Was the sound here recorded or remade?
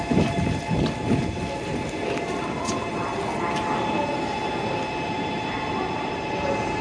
recorded